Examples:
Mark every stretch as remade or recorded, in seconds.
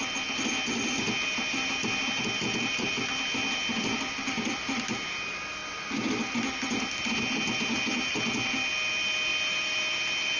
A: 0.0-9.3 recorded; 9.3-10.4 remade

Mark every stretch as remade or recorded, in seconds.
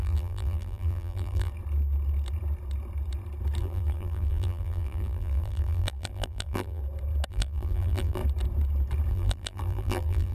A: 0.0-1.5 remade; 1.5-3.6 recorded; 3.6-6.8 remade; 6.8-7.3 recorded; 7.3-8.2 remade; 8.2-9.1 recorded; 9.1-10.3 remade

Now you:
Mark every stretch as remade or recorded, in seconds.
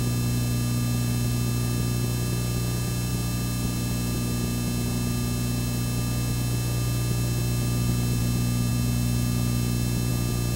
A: 0.0-10.6 recorded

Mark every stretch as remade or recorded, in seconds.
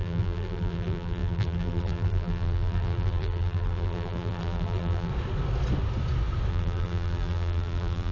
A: 0.0-5.1 remade; 5.1-6.5 recorded; 6.5-8.1 remade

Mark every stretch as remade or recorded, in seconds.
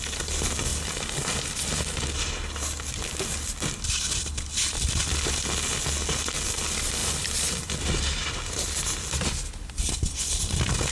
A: 0.0-0.7 recorded; 0.7-1.4 remade; 1.4-7.0 recorded; 7.0-10.1 remade; 10.1-10.9 recorded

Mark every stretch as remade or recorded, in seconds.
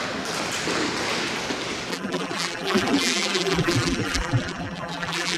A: 0.0-1.9 recorded; 1.9-5.4 remade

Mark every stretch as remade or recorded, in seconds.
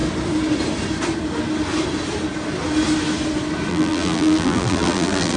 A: 0.0-3.7 recorded; 3.7-5.4 remade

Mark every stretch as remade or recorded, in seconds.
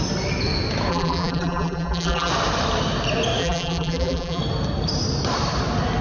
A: 0.0-0.9 recorded; 0.9-2.3 remade; 2.3-3.4 recorded; 3.4-4.4 remade; 4.4-6.0 recorded